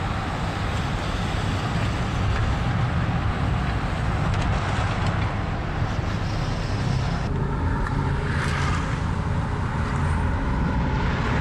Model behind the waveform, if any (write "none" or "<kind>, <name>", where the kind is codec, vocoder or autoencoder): none